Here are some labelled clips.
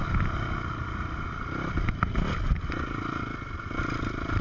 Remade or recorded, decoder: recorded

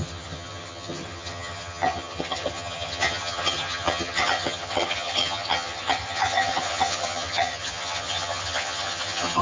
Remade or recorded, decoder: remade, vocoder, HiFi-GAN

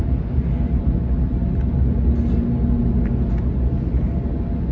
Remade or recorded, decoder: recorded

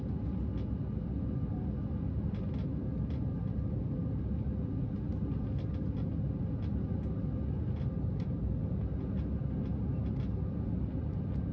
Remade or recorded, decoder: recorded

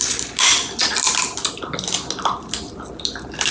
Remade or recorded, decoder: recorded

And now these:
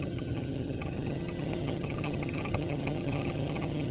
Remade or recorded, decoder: remade, vocoder, HiFi-GAN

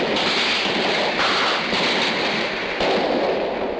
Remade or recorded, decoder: recorded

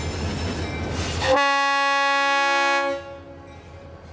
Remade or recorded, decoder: recorded